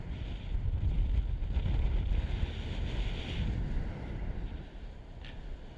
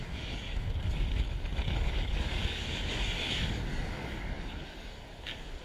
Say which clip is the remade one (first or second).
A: second